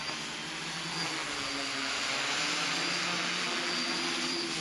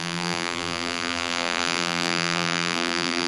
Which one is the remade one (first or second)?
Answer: second